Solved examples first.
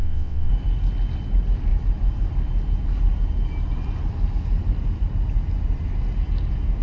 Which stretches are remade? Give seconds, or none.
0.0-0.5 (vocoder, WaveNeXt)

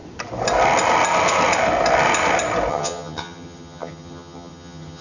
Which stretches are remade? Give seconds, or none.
2.7-5.0 (vocoder, HiFi-GAN)

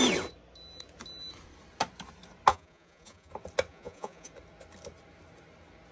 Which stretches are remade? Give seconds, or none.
2.5-3.3 (vocoder, Vocos); 3.7-4.3

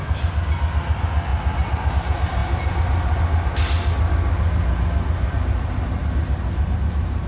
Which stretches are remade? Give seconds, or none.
none

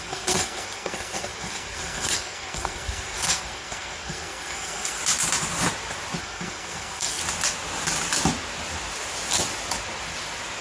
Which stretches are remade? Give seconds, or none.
0.0-5.0 (codec, SNAC); 6.2-7.2